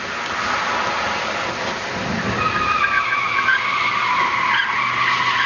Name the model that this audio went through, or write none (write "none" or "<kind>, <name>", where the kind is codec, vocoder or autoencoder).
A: none